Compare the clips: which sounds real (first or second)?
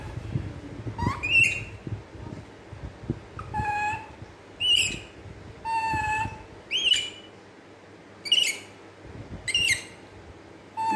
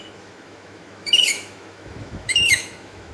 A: first